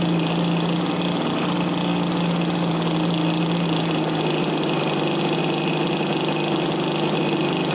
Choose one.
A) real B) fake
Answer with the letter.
A